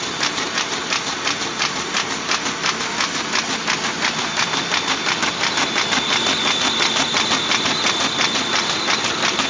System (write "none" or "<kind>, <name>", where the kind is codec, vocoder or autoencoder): none